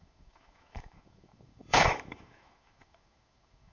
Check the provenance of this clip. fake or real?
fake